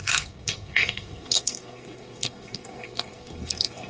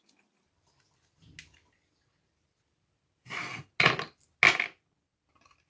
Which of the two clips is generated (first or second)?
first